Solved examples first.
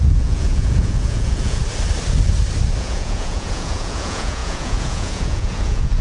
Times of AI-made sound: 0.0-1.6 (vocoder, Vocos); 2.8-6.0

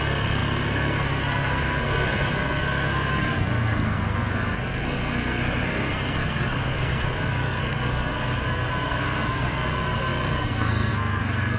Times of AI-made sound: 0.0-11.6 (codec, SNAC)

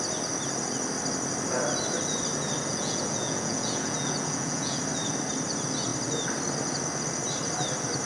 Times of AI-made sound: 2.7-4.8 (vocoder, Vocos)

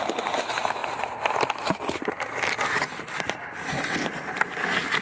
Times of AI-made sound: none